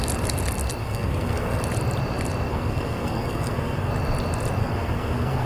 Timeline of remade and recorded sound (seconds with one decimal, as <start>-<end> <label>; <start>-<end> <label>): 0.0-0.8 recorded; 0.8-1.6 remade; 1.6-2.5 recorded; 2.5-3.9 remade; 3.9-4.6 recorded; 4.6-5.5 remade